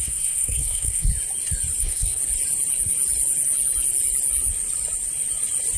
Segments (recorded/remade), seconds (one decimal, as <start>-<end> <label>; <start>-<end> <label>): 0.0-1.1 remade; 1.1-1.8 recorded; 1.8-2.2 remade; 2.2-5.8 recorded